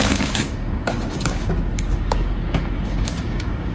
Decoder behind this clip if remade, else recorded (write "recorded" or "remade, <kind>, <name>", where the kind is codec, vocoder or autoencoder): remade, codec, DAC